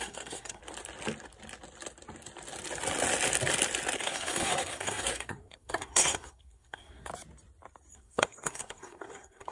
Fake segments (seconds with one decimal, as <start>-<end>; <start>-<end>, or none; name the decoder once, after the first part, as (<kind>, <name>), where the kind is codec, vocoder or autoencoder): 0.0-0.6 (codec, SNAC); 4.0-7.1; 7.9-9.5